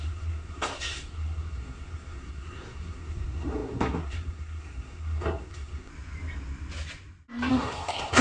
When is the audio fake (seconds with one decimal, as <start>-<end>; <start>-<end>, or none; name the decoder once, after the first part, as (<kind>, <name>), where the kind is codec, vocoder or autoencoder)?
0.0-5.9 (codec, SNAC); 7.5-8.2